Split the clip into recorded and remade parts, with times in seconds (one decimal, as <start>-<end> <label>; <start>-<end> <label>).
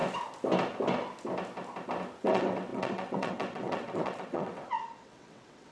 0.0-2.2 recorded; 2.2-5.7 remade